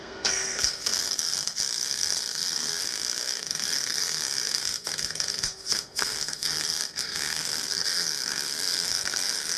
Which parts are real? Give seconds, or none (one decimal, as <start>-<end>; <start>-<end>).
none